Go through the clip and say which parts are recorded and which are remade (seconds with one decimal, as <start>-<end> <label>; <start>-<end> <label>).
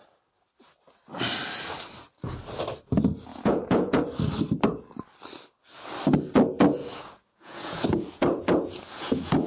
0.0-3.3 recorded; 3.3-4.0 remade; 4.0-6.8 recorded; 6.8-9.5 remade